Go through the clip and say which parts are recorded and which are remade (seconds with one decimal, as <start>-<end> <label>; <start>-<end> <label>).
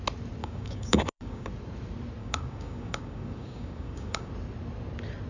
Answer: 0.0-0.4 recorded; 0.4-1.5 remade; 1.5-2.2 recorded; 2.2-4.3 remade; 4.3-5.3 recorded